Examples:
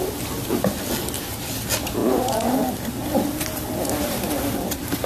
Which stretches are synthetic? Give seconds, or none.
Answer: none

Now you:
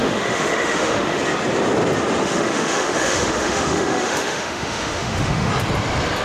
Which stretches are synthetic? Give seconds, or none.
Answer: 0.0-1.2 (autoencoder, DAC-VAE); 2.2-5.5